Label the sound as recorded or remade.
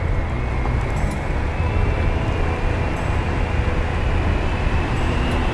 recorded